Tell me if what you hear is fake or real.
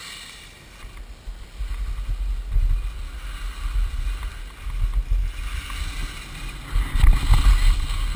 real